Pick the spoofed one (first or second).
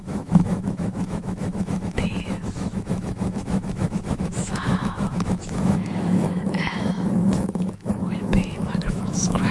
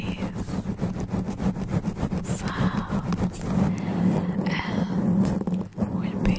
first